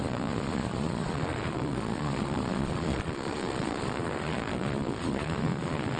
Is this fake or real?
fake